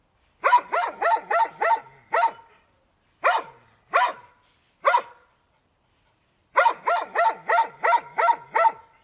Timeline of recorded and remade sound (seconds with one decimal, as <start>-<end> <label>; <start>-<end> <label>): 0.0-9.0 recorded